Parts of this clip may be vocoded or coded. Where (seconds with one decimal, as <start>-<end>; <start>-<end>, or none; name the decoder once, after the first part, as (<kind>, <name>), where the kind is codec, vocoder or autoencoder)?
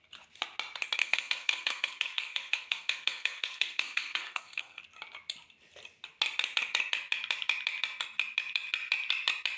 1.0-4.8 (codec, SNAC)